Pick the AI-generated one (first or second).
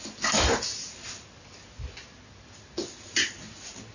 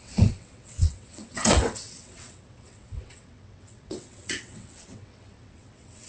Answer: second